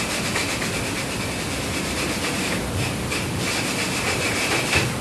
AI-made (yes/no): no